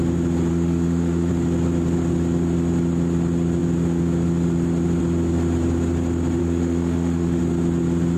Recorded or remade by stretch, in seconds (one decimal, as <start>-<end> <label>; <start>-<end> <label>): 0.0-0.5 recorded; 0.5-1.3 remade; 1.3-6.4 recorded; 6.4-7.4 remade; 7.4-8.2 recorded